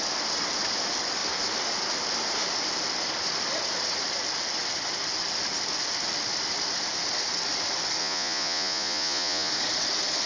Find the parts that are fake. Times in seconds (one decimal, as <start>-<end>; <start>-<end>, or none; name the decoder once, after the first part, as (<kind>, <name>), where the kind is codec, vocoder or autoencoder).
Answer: 8.0-9.5 (vocoder, Vocos)